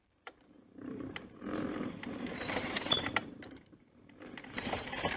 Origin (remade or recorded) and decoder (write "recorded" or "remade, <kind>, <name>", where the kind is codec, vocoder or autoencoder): remade, vocoder, BigVGAN v2